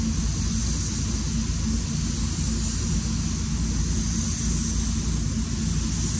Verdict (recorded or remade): recorded